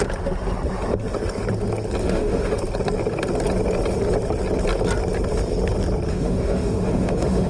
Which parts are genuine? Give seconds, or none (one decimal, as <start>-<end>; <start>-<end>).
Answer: 0.0-2.0; 2.6-6.1